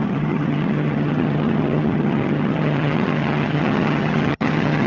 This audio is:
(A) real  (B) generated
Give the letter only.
B